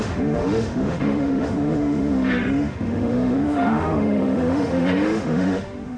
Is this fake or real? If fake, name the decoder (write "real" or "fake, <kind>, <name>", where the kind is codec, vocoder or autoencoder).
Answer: fake, autoencoder, DAC-VAE